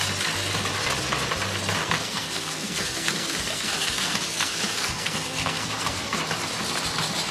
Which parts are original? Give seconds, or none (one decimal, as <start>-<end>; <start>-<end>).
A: 0.0-1.8; 6.2-7.3